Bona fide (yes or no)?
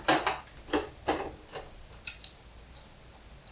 yes